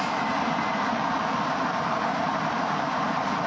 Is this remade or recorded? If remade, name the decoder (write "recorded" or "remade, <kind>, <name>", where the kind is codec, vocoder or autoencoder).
remade, vocoder, BigVGAN v2